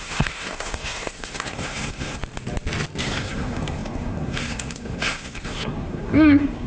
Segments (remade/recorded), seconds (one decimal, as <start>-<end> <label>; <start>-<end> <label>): 0.0-2.2 remade; 2.2-3.0 recorded; 3.0-6.7 remade